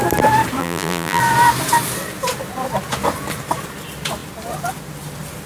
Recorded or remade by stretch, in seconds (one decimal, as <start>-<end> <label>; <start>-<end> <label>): 0.0-0.6 recorded; 0.6-1.2 remade; 1.2-5.5 recorded